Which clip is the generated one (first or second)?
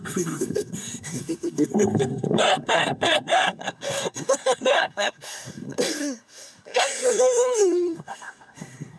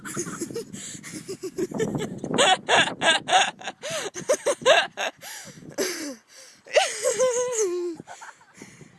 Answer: first